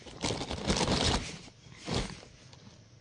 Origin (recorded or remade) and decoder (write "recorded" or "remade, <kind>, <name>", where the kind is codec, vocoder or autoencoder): recorded